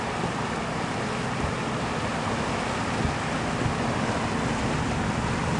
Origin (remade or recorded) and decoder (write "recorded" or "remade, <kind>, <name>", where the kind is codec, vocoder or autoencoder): recorded